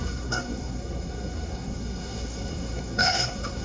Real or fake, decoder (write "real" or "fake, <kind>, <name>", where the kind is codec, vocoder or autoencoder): fake, codec, SNAC